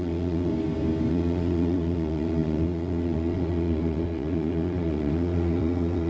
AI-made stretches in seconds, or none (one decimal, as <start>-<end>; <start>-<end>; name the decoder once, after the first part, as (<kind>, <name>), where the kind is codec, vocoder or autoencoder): 0.0-0.5 (vocoder, Vocos); 1.1-6.1

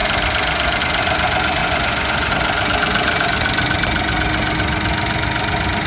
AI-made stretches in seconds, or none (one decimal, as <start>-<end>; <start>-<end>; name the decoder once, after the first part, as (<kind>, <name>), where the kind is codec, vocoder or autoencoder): 1.6-2.3 (vocoder, Vocos)

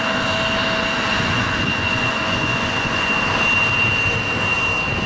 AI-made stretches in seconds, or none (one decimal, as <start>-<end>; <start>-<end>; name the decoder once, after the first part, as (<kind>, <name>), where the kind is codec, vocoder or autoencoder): 1.1-3.1 (vocoder, Vocos)